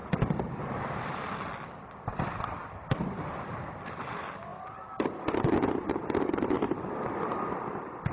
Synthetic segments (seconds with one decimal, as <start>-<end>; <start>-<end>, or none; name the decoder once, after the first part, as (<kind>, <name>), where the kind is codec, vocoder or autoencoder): none